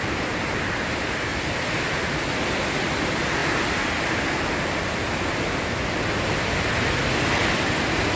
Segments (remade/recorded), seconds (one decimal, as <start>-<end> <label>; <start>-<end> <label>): 0.0-8.2 recorded